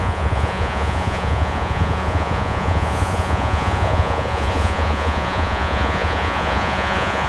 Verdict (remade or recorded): remade